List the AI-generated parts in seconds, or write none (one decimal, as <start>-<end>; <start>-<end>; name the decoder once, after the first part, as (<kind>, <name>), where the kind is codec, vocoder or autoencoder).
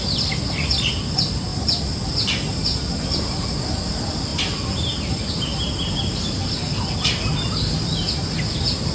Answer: none